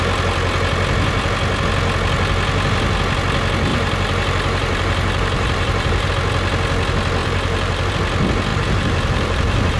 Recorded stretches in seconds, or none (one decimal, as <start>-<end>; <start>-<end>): 0.0-3.7; 6.1-7.2; 7.9-8.5